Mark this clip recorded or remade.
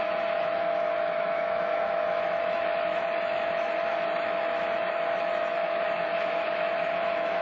remade